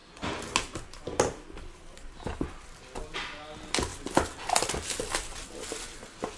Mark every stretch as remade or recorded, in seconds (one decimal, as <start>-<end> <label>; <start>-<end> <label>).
0.0-6.4 recorded